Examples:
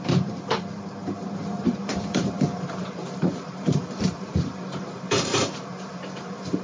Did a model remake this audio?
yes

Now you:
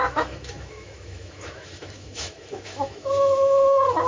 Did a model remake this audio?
yes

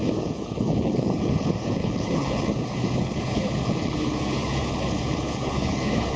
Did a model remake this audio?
yes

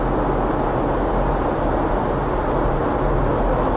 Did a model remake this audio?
no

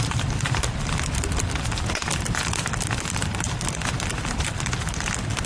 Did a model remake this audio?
yes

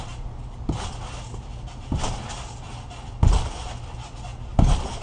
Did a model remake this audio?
no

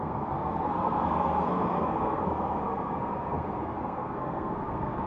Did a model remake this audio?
yes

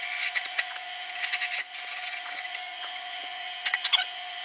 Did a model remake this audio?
yes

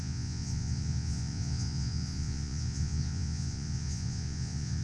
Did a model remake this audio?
yes